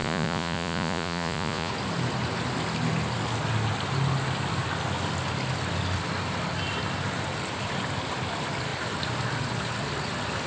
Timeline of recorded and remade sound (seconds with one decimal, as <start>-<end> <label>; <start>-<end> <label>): 0.0-1.7 remade; 1.7-10.5 recorded